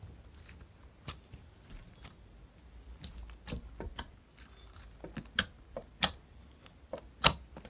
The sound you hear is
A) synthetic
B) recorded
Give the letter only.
B